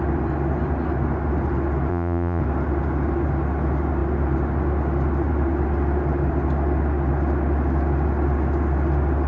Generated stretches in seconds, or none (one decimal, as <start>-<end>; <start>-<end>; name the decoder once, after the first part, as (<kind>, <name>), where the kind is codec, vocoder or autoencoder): 1.9-2.4 (vocoder, Vocos)